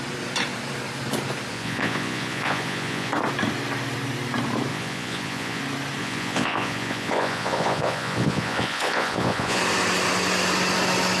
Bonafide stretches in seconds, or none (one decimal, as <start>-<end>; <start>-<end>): 0.0-1.5; 3.1-4.7; 5.6-6.0; 9.6-11.2